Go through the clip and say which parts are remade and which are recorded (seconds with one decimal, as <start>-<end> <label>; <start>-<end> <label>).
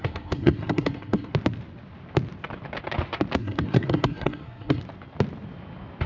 0.0-1.3 remade; 1.3-3.4 recorded; 3.4-4.8 remade; 4.8-6.1 recorded